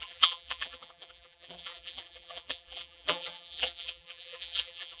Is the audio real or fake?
fake